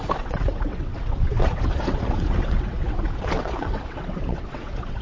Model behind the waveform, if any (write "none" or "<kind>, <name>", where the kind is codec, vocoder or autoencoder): vocoder, WaveNeXt